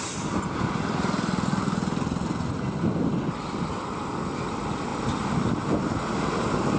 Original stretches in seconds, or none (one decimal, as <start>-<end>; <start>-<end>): 0.0-6.8